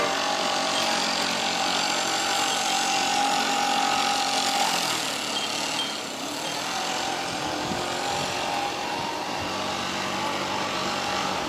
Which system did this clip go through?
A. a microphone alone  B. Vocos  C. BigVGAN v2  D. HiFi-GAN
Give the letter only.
A